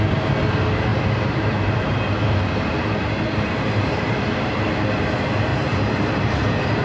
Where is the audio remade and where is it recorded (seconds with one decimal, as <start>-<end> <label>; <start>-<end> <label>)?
0.0-0.9 recorded; 0.9-4.6 remade; 4.6-5.5 recorded; 5.5-6.2 remade; 6.2-6.8 recorded